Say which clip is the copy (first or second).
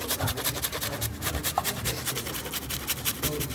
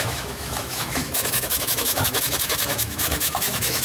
second